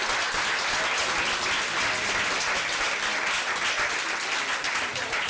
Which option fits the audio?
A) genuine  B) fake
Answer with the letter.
A